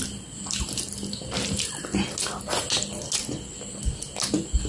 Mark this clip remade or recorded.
recorded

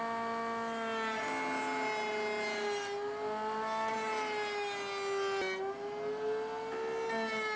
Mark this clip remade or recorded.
recorded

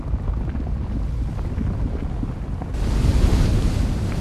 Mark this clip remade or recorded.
recorded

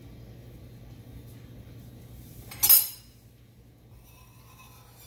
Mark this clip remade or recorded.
recorded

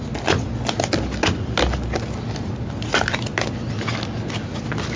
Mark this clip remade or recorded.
recorded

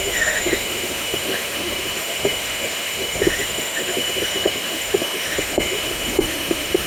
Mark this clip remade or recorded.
remade